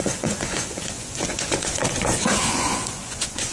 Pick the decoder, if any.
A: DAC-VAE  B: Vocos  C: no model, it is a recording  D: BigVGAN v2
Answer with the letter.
B